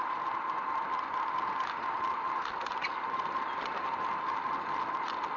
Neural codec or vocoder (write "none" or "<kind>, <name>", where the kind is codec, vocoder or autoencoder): none